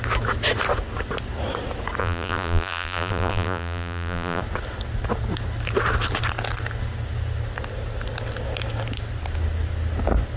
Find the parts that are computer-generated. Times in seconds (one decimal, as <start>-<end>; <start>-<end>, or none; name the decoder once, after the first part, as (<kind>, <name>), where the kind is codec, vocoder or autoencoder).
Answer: 2.0-4.4 (vocoder, BigVGAN v2)